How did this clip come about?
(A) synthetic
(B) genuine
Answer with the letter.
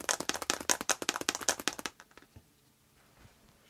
B